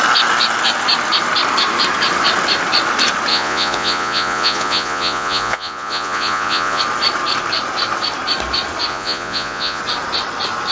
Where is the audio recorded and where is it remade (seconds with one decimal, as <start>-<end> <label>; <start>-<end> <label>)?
0.0-3.3 recorded; 3.3-6.8 remade; 6.8-8.9 recorded; 8.9-9.8 remade; 9.8-10.7 recorded

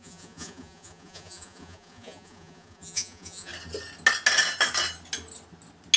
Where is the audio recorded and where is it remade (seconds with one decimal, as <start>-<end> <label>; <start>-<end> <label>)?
0.0-3.5 remade; 3.5-6.0 recorded

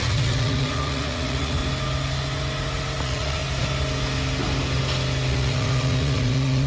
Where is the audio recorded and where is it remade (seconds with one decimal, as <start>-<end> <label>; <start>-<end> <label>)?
0.0-1.6 remade; 1.6-3.0 recorded; 3.0-3.4 remade; 3.4-5.3 recorded; 5.3-6.7 remade

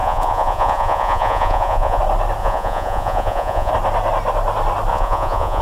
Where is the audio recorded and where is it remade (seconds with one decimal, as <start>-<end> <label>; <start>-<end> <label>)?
0.0-2.0 remade; 2.0-2.4 recorded; 2.4-3.7 remade; 3.7-4.9 recorded; 4.9-5.6 remade

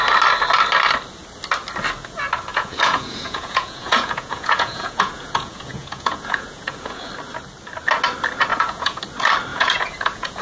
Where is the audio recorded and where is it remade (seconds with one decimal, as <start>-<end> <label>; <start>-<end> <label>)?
0.0-2.5 recorded; 2.5-7.1 remade; 7.1-8.5 recorded; 8.5-9.0 remade; 9.0-9.5 recorded; 9.5-10.4 remade

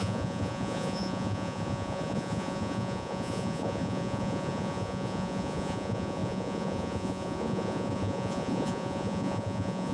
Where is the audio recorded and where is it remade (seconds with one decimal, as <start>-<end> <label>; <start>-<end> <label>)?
0.0-9.9 remade

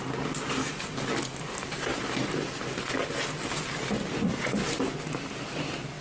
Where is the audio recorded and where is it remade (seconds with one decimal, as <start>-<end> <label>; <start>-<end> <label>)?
0.0-6.0 recorded

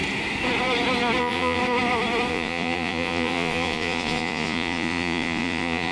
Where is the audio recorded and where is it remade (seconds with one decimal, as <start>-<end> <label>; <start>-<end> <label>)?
0.0-1.2 recorded; 1.2-1.6 remade; 1.6-2.3 recorded; 2.3-5.9 remade